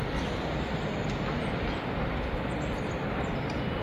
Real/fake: real